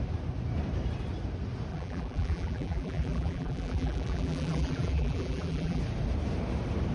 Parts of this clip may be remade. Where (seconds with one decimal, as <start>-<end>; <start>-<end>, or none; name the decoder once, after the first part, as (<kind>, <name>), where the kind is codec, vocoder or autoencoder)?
1.7-5.8 (vocoder, BigVGAN v2)